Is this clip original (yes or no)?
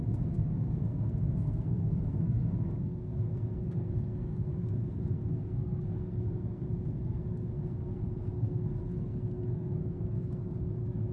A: no